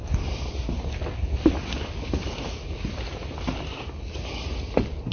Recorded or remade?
recorded